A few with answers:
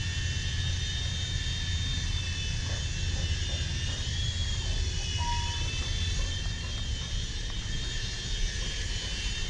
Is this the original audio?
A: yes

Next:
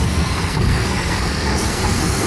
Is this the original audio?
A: no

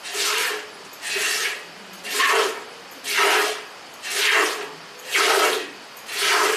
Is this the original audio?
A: yes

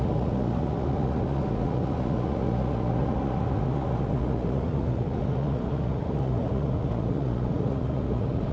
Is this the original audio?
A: no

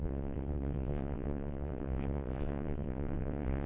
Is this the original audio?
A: no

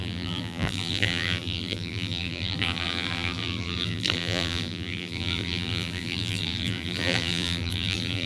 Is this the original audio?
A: no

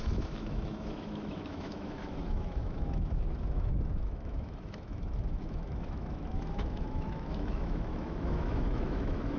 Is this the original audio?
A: no